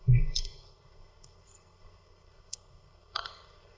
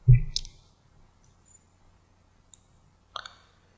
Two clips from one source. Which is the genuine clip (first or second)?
second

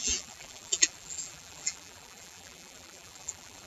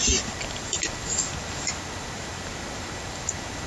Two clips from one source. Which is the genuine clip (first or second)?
second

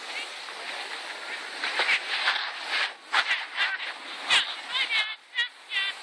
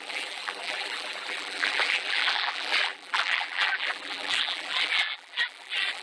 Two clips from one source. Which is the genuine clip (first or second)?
first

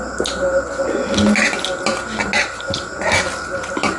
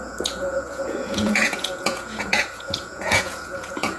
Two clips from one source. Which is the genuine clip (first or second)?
first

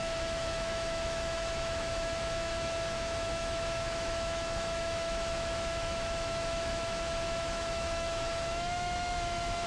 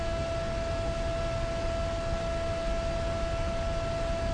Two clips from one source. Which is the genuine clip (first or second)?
second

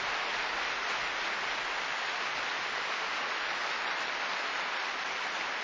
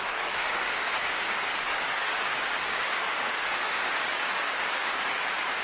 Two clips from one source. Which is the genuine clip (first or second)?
first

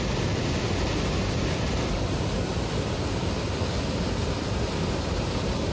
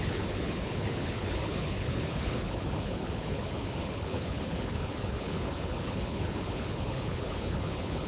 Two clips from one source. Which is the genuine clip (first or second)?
first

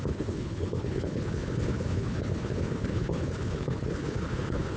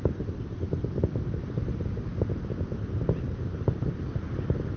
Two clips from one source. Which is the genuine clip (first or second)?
second